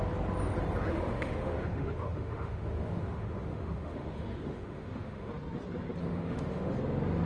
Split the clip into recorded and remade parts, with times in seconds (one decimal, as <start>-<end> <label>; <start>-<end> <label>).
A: 0.0-0.9 recorded; 0.9-5.3 remade; 5.3-6.0 recorded; 6.0-6.7 remade; 6.7-7.3 recorded